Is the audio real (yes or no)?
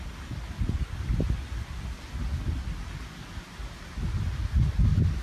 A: yes